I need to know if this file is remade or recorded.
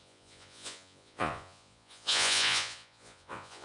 remade